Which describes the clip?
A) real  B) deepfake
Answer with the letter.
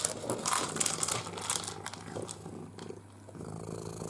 A